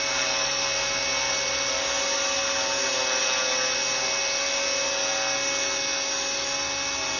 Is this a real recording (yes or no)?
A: yes